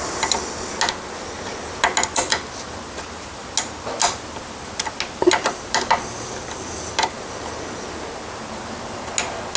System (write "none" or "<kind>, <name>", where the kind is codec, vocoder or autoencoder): none